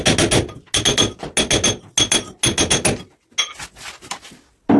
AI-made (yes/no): no